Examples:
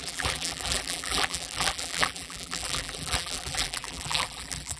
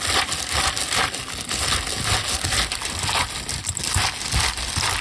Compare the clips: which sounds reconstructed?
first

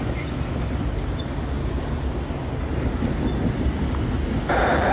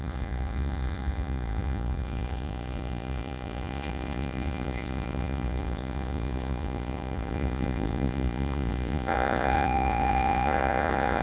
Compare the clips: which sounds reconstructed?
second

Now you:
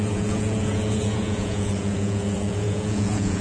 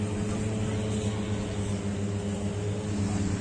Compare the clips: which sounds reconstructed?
first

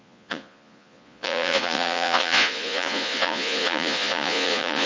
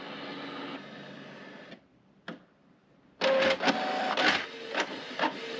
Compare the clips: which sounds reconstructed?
first